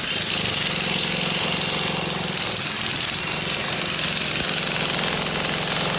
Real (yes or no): yes